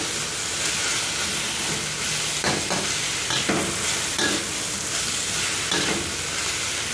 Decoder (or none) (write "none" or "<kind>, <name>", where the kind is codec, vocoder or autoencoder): none